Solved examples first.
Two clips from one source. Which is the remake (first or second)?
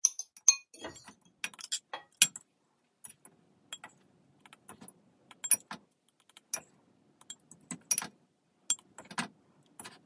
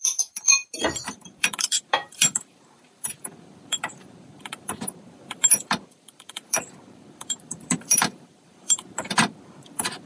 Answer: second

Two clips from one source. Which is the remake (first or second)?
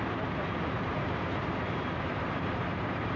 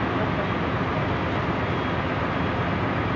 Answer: first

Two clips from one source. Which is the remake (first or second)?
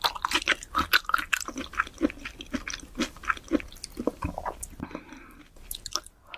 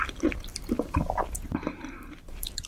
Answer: second